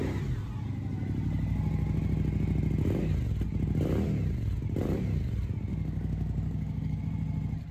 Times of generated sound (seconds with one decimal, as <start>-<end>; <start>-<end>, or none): 5.7-7.0